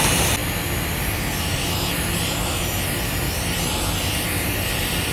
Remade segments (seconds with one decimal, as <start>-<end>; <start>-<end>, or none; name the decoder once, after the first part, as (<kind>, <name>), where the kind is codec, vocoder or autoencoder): none

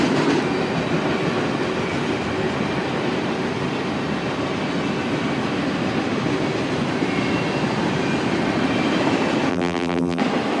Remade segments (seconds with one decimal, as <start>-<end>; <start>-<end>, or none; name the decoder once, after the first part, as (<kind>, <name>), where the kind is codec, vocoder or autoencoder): 9.5-10.2 (vocoder, BigVGAN v2)

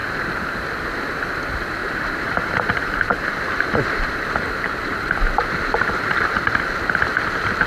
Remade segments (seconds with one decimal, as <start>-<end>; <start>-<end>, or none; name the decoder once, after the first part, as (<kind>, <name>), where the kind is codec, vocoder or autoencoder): 1.8-5.8 (vocoder, BigVGAN v2)

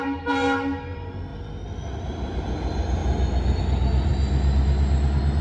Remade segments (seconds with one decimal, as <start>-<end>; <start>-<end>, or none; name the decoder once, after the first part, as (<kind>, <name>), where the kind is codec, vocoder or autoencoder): 0.0-1.3 (vocoder, BigVGAN v2); 1.9-3.0; 3.6-4.1

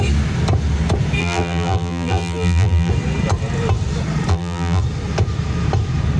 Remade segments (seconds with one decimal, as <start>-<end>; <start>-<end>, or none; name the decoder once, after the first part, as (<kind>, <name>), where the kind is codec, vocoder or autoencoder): 1.2-2.9 (vocoder, BigVGAN v2); 4.3-4.8

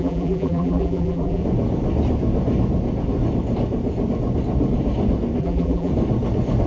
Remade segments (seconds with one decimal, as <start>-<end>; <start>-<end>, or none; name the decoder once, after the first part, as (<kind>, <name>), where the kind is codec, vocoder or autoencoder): 0.0-1.4 (vocoder, BigVGAN v2); 5.4-5.9

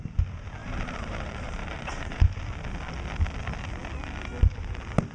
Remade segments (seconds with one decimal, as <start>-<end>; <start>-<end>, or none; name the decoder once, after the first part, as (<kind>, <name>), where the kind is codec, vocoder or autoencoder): 0.6-2.2 (vocoder, BigVGAN v2)

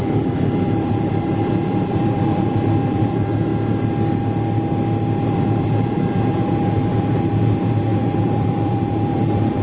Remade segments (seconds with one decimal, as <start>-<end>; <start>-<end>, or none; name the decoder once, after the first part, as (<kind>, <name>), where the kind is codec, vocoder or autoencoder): 0.0-3.5 (vocoder, BigVGAN v2); 5.2-9.6